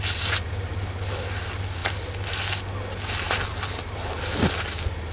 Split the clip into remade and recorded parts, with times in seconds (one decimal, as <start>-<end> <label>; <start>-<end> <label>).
0.0-5.1 recorded